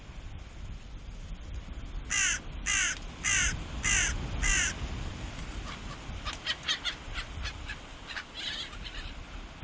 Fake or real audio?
real